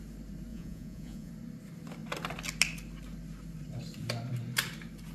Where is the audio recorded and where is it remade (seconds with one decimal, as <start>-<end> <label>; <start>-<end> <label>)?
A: 0.0-0.5 recorded; 0.5-1.3 remade; 1.3-5.1 recorded